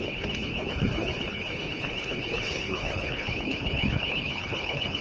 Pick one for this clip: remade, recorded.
remade